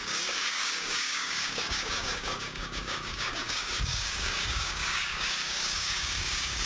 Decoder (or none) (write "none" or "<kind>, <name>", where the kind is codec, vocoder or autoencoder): codec, DAC